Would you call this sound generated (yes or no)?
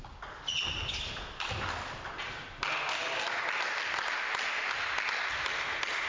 no